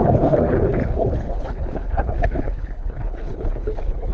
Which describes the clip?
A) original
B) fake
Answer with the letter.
B